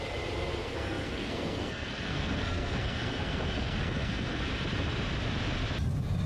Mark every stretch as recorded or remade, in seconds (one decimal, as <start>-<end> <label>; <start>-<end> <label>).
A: 0.0-0.6 recorded; 0.6-4.4 remade; 4.4-6.3 recorded

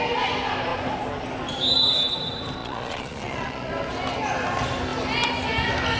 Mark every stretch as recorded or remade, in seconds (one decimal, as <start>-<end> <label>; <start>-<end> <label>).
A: 0.0-2.6 recorded; 2.6-3.7 remade; 3.7-6.0 recorded

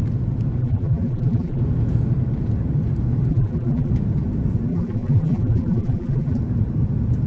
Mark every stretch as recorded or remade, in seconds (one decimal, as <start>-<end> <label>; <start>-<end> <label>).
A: 0.0-0.6 recorded; 0.6-1.6 remade; 1.6-3.3 recorded; 3.3-3.9 remade; 3.9-4.7 recorded; 4.7-6.4 remade; 6.4-7.3 recorded

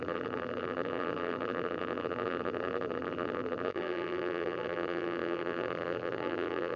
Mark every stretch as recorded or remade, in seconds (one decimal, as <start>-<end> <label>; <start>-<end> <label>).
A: 0.0-6.8 remade

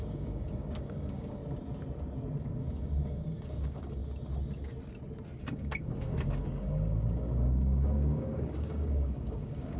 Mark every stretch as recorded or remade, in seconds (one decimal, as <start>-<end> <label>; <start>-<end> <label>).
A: 0.0-1.4 remade; 1.4-2.5 recorded; 2.5-4.0 remade; 4.0-5.4 recorded; 5.4-9.8 remade